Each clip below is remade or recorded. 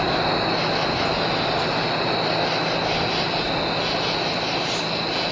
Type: recorded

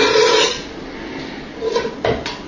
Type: recorded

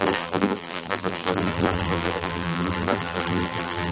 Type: remade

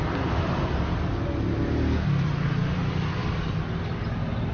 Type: recorded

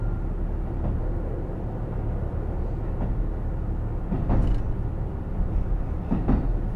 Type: recorded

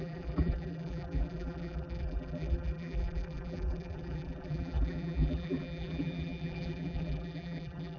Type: remade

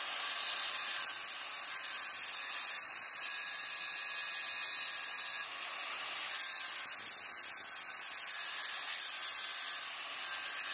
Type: recorded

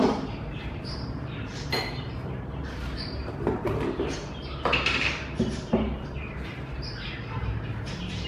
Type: remade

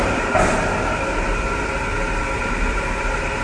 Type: recorded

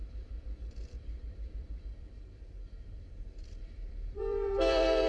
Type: remade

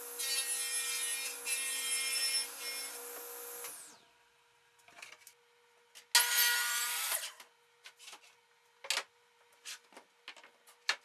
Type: recorded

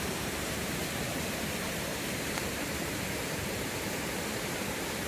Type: remade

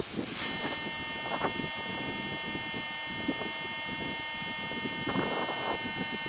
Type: recorded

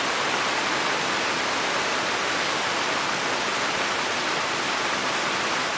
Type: recorded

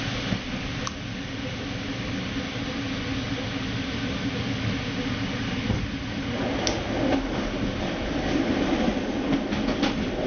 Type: recorded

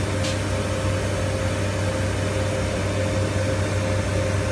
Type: recorded